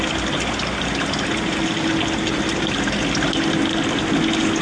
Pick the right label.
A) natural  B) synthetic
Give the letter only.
A